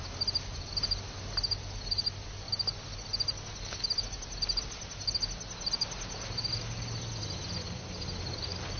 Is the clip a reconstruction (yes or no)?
no